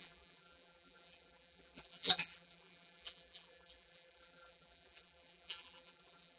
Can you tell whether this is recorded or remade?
remade